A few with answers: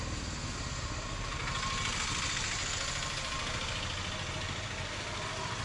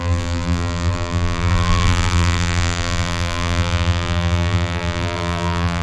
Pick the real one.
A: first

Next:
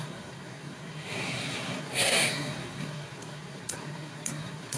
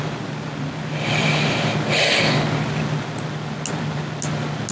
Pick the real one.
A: second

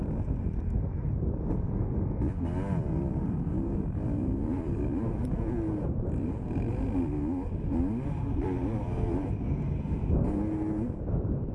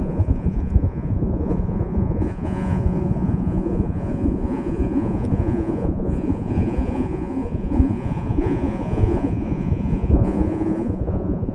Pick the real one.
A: first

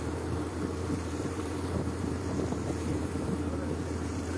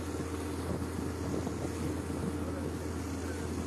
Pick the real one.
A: second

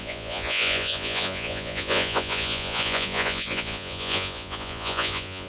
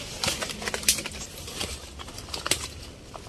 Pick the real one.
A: second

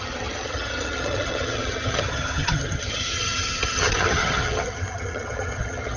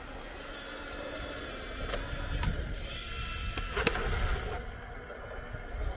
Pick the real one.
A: second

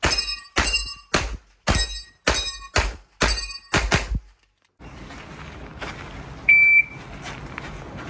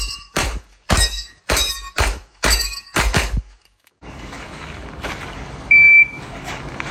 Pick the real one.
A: first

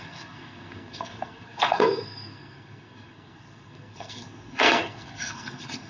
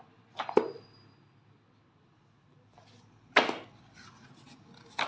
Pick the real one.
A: second